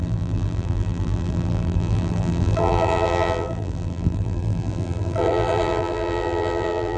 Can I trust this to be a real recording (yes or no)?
no